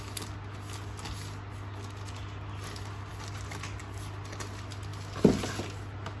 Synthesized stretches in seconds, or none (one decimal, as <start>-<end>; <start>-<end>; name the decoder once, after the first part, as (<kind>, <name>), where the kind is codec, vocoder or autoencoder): none